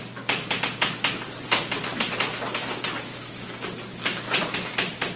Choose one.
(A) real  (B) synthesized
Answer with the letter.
A